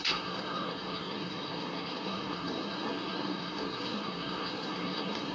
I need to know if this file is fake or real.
fake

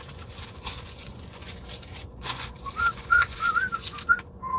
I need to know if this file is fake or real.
fake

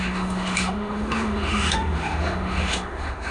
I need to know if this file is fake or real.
fake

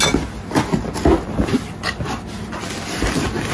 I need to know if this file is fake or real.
real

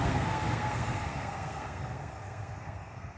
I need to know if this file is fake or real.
fake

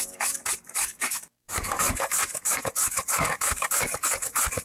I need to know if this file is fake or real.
fake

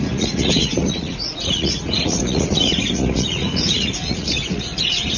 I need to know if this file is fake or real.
fake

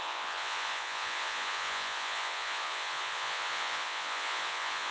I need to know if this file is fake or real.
fake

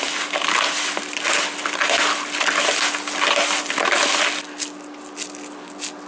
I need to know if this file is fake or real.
real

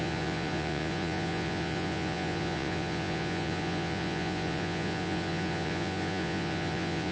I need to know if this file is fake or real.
fake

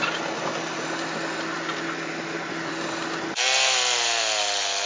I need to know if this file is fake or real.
real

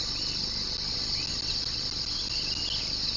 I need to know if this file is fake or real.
real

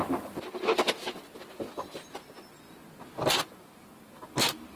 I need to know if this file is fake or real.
real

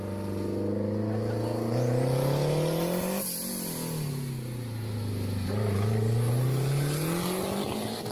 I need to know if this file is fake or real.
real